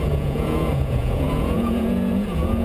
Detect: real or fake fake